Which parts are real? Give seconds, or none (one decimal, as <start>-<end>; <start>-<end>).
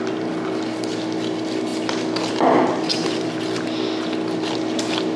0.0-5.2